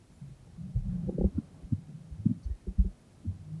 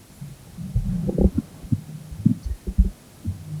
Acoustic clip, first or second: second